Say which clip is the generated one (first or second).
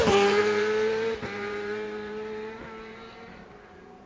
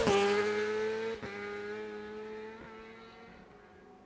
first